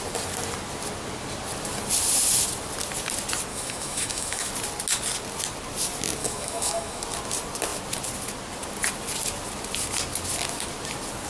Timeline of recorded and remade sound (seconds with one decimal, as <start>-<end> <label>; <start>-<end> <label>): 0.0-3.5 recorded; 3.5-4.5 remade; 4.5-6.2 recorded; 6.2-7.0 remade; 7.0-11.3 recorded